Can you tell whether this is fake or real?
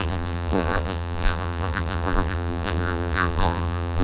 fake